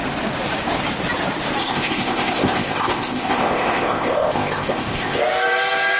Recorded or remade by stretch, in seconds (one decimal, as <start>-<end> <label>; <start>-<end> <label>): 0.0-1.6 recorded; 1.6-5.2 remade; 5.2-6.0 recorded